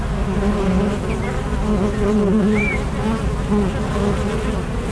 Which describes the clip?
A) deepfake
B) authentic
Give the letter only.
B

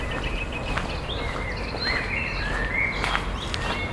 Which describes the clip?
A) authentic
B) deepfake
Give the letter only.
A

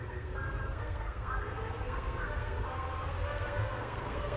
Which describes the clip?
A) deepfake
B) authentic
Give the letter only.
A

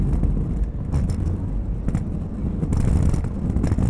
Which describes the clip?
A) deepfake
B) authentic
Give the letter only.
B